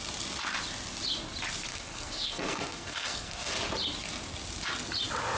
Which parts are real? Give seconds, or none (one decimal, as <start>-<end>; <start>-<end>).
0.0-1.7; 3.5-5.4